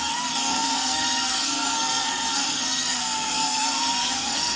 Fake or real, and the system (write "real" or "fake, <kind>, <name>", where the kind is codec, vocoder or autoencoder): fake, codec, SNAC